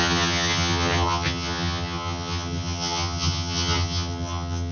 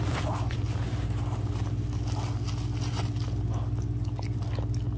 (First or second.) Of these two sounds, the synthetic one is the first